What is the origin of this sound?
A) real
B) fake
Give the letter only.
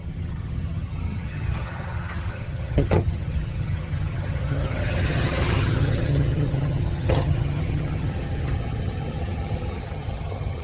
B